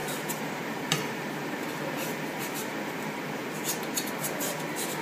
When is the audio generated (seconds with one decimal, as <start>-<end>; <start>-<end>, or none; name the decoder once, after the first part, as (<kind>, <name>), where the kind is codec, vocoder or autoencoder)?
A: 0.0-2.8 (vocoder, BigVGAN v2)